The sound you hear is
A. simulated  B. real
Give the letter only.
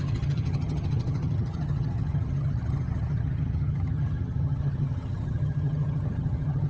A